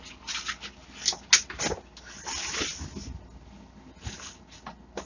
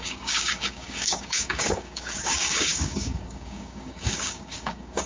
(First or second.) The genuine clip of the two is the first